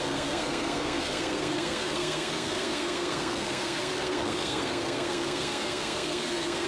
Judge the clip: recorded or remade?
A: remade